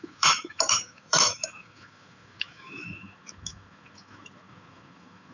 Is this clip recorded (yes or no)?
no